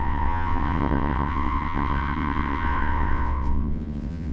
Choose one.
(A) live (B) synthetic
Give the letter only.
B